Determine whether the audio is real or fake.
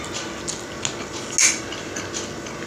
real